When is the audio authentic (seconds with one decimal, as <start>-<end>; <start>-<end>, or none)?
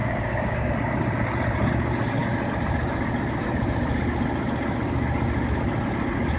0.7-6.4